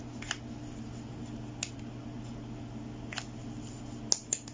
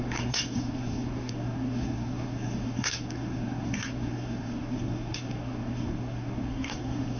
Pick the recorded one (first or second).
first